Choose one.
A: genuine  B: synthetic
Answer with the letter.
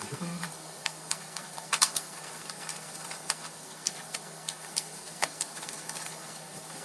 B